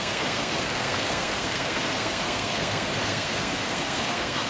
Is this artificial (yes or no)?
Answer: yes